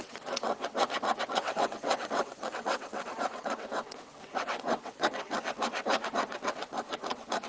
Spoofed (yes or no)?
yes